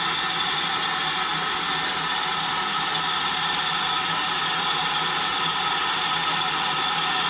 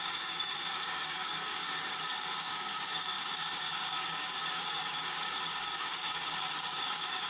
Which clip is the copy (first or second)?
second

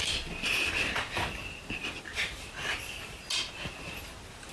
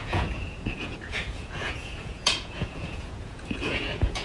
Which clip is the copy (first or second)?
second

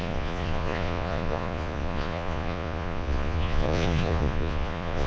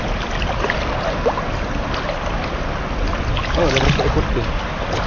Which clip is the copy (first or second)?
first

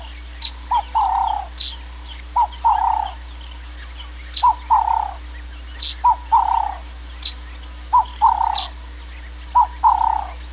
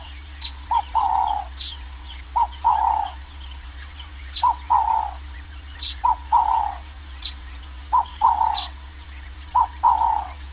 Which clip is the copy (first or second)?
second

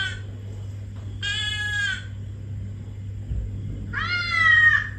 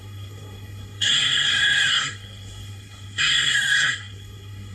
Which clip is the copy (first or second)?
second